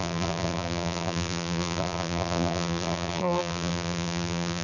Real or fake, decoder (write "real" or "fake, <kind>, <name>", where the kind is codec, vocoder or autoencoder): fake, vocoder, BigVGAN v2